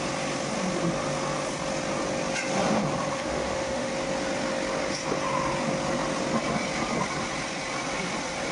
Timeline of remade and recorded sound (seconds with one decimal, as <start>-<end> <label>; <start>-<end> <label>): 0.0-3.1 recorded; 3.1-3.9 remade; 3.9-8.5 recorded